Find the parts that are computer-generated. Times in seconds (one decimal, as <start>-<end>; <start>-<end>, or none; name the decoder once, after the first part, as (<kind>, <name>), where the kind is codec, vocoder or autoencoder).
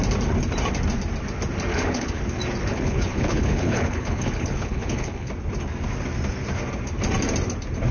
1.7-2.2 (codec, HILCodec); 2.7-5.3